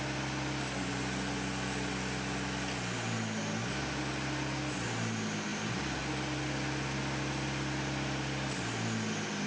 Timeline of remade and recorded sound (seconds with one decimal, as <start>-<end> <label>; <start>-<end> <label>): 0.0-5.5 recorded; 5.5-6.0 remade; 6.0-9.5 recorded